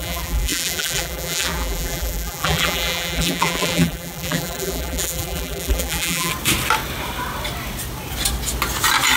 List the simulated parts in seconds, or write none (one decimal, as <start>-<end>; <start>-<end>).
0.0-6.3